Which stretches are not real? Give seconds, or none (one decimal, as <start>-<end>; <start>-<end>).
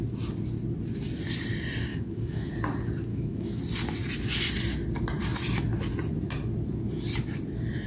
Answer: 1.9-2.5; 3.1-3.6